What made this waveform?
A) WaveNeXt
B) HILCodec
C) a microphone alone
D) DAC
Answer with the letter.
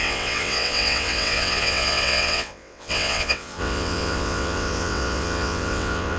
A